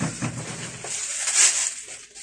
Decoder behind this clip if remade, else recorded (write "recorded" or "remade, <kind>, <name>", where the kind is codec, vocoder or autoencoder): recorded